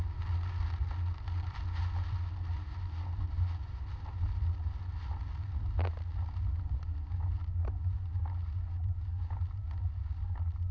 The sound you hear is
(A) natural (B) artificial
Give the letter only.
A